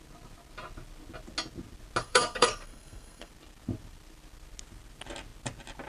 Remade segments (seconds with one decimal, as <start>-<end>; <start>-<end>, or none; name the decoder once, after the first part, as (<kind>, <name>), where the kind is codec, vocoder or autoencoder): 2.0-3.3 (codec, SNAC)